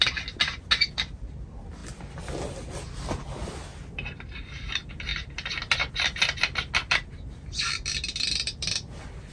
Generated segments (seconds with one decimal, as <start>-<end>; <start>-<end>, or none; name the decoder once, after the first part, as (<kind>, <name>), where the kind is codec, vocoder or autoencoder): none